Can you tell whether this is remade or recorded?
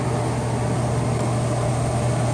recorded